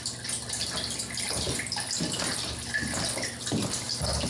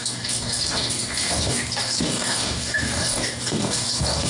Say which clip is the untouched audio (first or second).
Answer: first